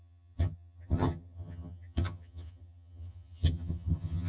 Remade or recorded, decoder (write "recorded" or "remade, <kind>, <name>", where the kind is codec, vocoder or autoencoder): remade, vocoder, HiFi-GAN